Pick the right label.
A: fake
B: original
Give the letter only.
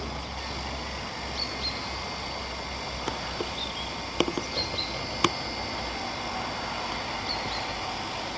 B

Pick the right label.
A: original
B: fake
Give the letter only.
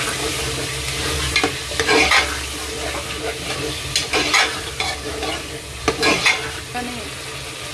A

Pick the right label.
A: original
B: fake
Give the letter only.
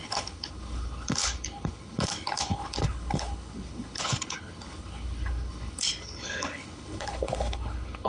B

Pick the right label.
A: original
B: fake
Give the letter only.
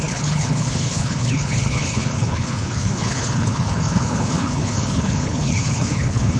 B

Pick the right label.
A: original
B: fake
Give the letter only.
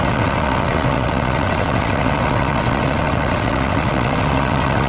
B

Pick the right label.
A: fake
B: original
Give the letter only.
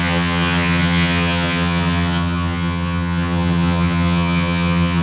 A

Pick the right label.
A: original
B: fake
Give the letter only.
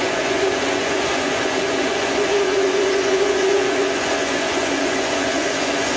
B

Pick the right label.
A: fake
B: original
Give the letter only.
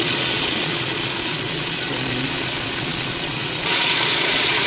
A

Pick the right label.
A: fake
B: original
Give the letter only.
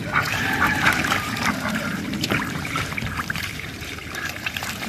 A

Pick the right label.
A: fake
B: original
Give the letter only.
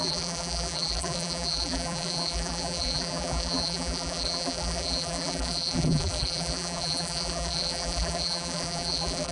A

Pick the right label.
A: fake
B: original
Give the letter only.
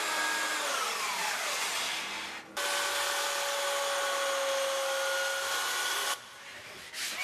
B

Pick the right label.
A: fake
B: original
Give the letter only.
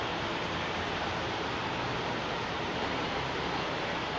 A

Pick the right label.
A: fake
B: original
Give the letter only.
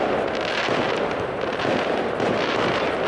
B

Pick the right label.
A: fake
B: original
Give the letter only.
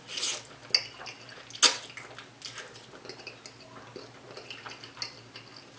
B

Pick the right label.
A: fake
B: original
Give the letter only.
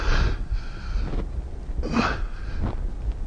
B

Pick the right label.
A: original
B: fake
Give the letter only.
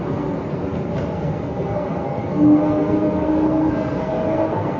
B